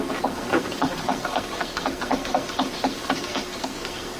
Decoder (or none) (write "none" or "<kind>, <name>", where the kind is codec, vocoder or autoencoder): codec, SNAC